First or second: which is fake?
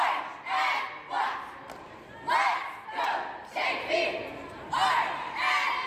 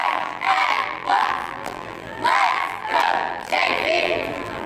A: second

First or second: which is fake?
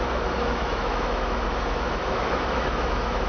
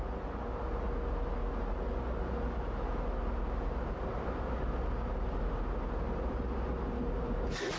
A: first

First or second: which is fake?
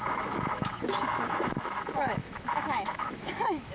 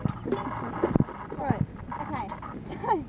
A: first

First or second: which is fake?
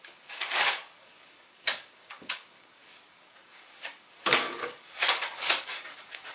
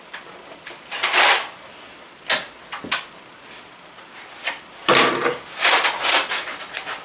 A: first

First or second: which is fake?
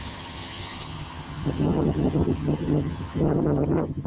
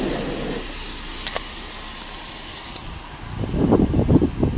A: first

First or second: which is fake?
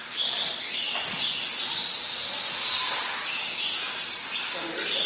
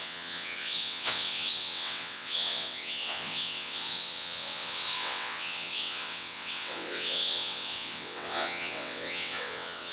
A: second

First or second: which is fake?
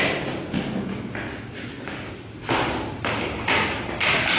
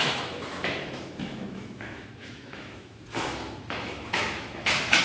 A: second